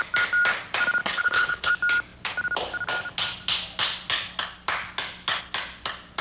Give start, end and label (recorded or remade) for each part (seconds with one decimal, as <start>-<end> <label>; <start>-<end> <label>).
0.0-1.0 recorded; 1.0-1.7 remade; 1.7-6.2 recorded